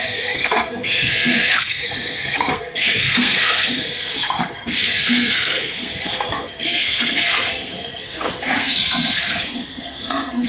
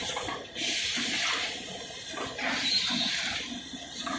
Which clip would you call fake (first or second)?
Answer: first